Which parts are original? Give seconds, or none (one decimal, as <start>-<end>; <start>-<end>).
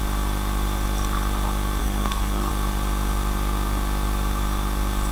0.0-1.8; 2.5-5.1